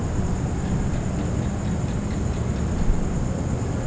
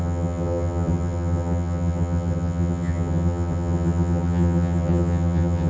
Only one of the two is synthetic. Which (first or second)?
second